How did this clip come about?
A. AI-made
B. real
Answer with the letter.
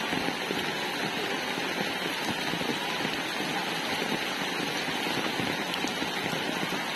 B